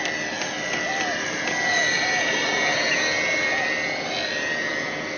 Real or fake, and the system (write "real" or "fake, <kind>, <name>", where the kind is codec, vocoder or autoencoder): real